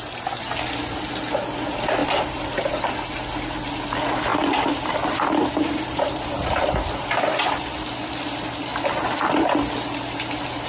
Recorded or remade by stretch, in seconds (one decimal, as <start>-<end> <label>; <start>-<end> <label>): 0.0-2.0 recorded; 2.0-2.7 remade; 2.7-4.3 recorded; 4.3-7.7 remade; 7.7-10.7 recorded